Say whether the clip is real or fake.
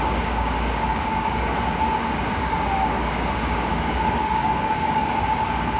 fake